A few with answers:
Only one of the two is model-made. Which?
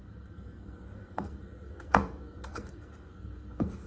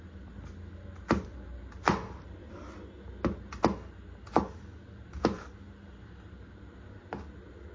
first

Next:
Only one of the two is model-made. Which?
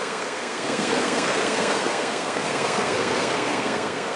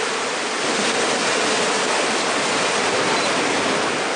first